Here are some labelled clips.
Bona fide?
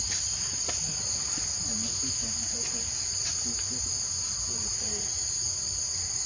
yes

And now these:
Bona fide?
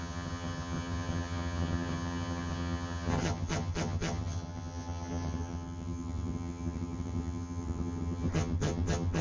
no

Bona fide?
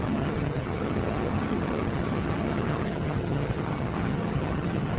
no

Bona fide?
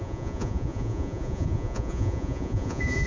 no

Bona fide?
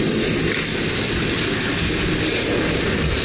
yes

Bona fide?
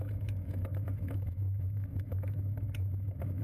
no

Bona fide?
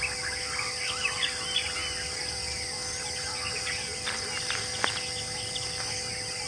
no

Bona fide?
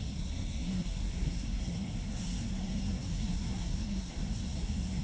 no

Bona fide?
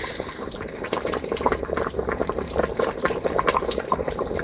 no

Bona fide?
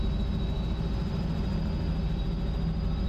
yes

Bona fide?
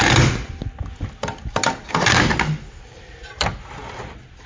yes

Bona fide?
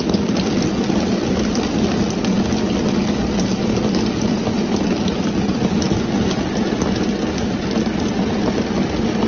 yes